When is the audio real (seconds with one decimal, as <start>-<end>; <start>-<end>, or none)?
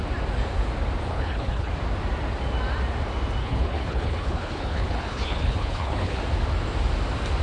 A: 0.0-1.1; 1.7-3.4; 6.2-7.4